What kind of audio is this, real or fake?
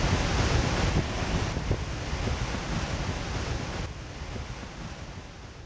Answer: real